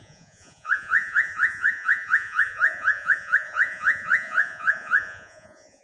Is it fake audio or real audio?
fake